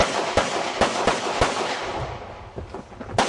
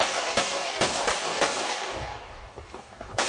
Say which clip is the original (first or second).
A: first